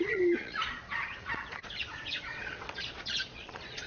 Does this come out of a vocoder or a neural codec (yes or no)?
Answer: yes